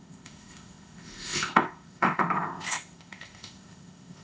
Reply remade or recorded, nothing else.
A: remade